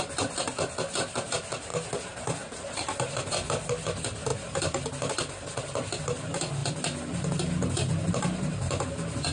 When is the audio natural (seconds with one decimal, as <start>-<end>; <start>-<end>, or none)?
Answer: 0.0-9.3